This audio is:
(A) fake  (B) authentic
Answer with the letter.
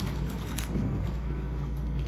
A